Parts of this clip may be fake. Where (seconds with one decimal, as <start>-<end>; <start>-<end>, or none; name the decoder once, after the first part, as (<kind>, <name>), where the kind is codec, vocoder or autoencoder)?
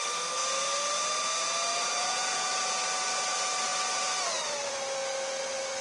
1.7-2.6 (vocoder, Vocos)